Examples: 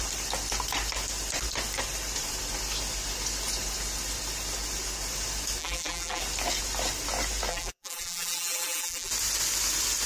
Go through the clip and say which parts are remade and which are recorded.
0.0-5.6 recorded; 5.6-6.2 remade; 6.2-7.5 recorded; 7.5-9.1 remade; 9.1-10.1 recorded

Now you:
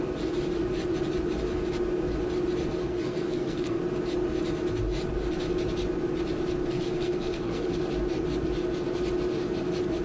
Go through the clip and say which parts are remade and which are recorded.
0.0-2.8 recorded; 2.8-3.8 remade; 3.8-6.7 recorded; 6.7-7.8 remade; 7.8-10.0 recorded

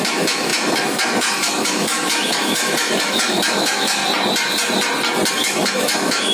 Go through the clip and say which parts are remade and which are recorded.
0.0-4.0 remade; 4.0-5.3 recorded; 5.3-6.3 remade

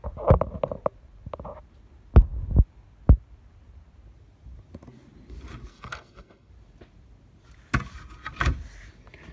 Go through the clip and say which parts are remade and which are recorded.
0.0-5.7 recorded; 5.7-6.5 remade; 6.5-9.3 recorded

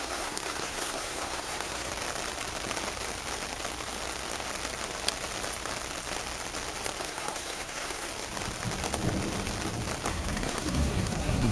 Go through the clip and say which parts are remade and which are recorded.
0.0-1.9 remade; 1.9-7.0 recorded; 7.0-8.1 remade; 8.1-10.1 recorded; 10.1-11.5 remade

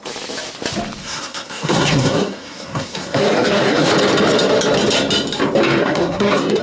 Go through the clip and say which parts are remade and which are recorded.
0.0-1.0 recorded; 1.0-3.9 remade; 3.9-5.8 recorded; 5.8-6.6 remade